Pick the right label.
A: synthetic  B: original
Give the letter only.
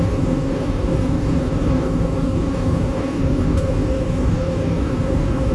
A